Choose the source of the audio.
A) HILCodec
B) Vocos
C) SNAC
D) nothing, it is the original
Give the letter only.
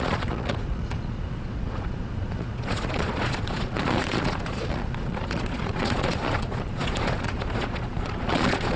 B